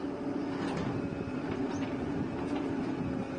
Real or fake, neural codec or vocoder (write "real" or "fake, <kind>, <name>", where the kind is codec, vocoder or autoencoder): real